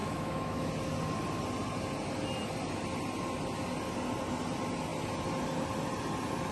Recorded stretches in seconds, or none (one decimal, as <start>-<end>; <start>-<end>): 0.7-6.5

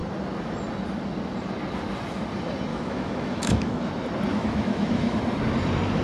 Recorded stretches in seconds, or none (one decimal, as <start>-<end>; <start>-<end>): 0.0-2.7; 3.9-4.3; 5.2-6.0

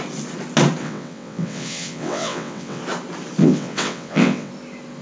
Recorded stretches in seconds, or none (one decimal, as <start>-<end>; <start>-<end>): 0.0-0.8; 2.8-3.4; 4.5-5.0